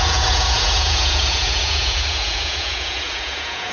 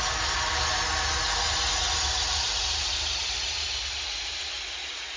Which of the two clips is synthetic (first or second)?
first